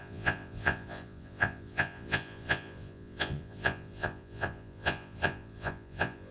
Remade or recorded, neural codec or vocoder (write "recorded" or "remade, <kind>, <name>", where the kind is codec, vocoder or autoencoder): remade, vocoder, Vocos